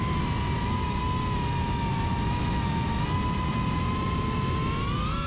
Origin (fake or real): real